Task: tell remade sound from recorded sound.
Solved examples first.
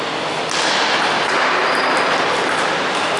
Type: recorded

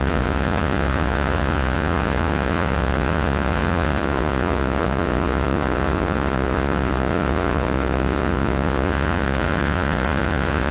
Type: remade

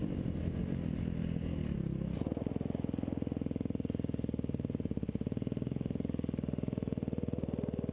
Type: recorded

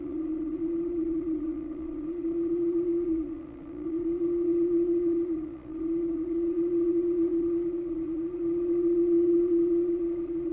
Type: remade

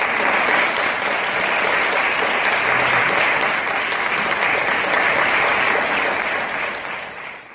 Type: recorded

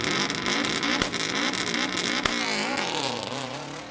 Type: recorded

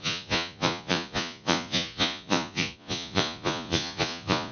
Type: remade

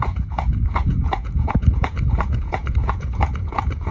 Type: remade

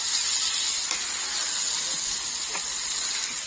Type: recorded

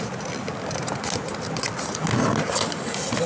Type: recorded